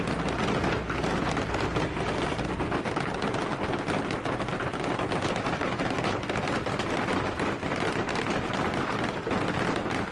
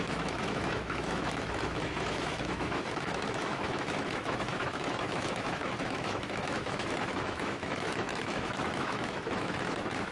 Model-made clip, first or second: second